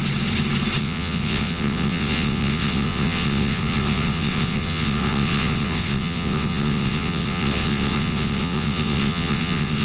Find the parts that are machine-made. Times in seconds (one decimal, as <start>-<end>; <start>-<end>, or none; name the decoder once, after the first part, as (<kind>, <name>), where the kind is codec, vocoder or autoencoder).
0.8-9.8 (vocoder, WaveNeXt)